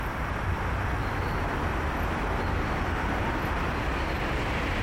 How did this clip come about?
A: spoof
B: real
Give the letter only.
B